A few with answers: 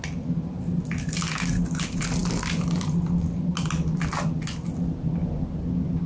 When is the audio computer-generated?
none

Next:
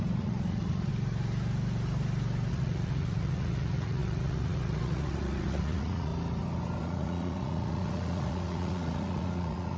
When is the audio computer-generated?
0.0-0.9 (vocoder, Vocos); 2.5-6.1; 6.8-9.8